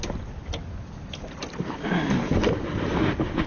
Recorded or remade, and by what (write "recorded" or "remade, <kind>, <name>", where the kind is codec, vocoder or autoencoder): recorded